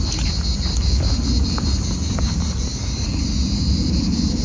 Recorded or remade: recorded